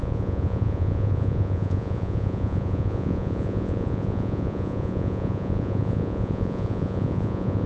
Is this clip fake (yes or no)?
yes